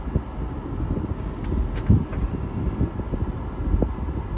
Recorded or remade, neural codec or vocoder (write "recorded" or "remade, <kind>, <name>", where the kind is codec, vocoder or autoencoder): recorded